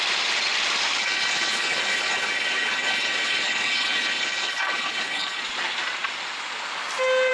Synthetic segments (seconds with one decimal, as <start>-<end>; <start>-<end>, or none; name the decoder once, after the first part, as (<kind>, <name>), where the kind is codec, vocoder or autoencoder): 1.0-5.4 (codec, HILCodec)